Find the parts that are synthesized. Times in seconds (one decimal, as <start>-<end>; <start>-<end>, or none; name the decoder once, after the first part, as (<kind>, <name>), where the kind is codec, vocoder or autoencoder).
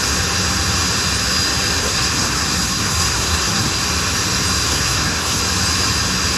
1.8-3.8 (codec, SNAC); 4.7-5.4